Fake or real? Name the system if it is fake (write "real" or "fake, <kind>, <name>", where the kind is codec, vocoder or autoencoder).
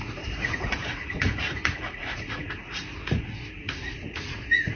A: fake, vocoder, Vocos